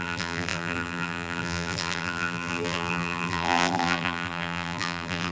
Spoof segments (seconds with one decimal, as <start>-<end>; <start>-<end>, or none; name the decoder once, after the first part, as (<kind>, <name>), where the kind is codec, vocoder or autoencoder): 0.0-5.3 (vocoder, BigVGAN v2)